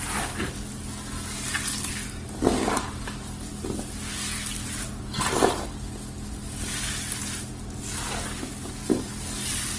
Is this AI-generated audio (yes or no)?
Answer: no